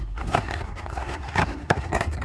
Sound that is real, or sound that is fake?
fake